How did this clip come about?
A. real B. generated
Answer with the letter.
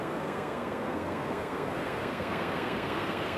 B